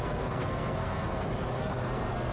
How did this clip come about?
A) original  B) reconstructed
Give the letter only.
B